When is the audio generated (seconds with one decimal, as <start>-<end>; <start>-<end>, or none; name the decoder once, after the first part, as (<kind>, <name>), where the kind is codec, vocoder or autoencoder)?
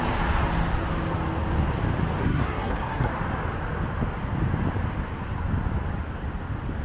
2.2-3.1 (codec, SNAC)